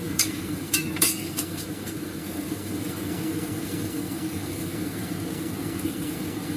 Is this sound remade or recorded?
remade